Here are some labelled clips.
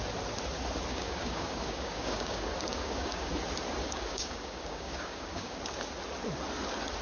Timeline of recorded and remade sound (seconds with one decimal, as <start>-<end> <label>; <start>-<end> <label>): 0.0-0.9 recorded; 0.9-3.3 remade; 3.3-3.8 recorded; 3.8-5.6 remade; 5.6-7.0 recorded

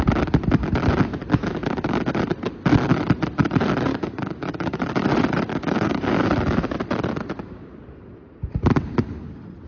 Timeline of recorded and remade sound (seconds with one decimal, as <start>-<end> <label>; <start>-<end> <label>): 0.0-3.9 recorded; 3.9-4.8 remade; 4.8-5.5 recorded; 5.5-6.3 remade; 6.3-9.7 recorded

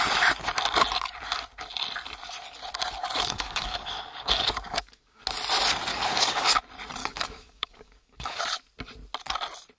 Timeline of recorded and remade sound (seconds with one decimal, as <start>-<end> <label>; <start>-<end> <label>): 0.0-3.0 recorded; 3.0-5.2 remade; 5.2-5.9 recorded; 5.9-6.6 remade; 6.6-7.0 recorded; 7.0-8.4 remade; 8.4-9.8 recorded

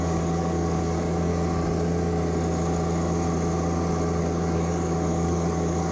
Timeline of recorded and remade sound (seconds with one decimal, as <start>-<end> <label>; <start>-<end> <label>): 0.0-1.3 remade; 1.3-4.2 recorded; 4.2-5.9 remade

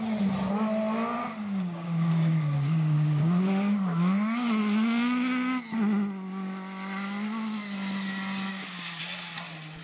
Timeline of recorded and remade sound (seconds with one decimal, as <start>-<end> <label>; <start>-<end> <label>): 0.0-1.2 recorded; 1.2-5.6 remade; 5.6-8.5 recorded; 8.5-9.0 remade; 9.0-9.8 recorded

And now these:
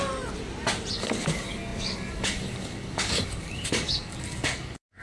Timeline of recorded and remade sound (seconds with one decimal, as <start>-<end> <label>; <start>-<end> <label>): 0.0-0.9 recorded; 0.9-5.0 remade

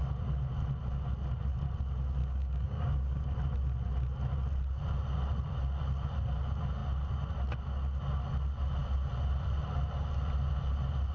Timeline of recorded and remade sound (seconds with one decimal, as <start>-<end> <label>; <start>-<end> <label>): 0.0-2.2 recorded; 2.2-3.2 remade; 3.2-11.1 recorded